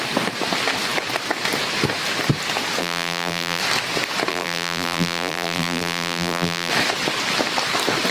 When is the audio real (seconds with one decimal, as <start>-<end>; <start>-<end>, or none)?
0.0-2.8; 3.6-4.3; 6.7-8.1